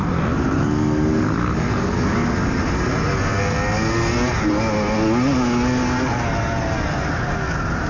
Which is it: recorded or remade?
recorded